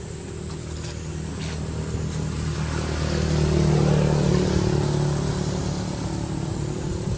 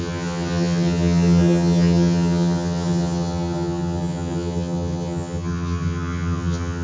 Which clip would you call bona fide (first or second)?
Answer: first